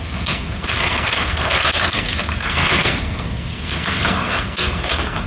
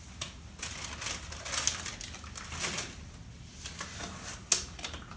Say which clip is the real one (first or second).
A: second